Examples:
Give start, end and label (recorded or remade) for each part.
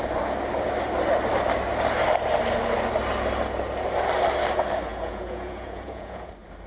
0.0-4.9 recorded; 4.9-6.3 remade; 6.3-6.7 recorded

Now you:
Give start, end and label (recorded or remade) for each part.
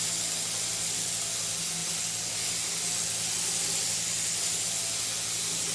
0.0-5.7 recorded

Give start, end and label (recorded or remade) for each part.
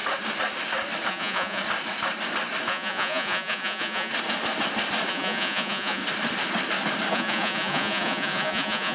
0.0-1.1 recorded; 1.1-1.6 remade; 1.6-2.7 recorded; 2.7-4.1 remade; 4.1-5.1 recorded; 5.1-6.0 remade; 6.0-7.1 recorded; 7.1-8.9 remade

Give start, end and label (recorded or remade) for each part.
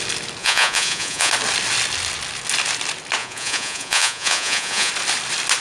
0.0-0.4 recorded; 0.4-1.3 remade; 1.3-3.2 recorded; 3.2-4.9 remade; 4.9-5.6 recorded